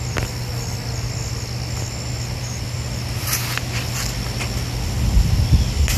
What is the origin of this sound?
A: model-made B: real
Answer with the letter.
B